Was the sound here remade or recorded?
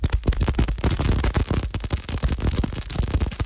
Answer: recorded